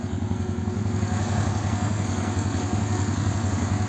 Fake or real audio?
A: fake